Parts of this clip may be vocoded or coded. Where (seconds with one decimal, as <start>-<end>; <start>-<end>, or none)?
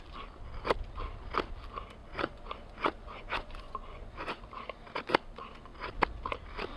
2.0-4.4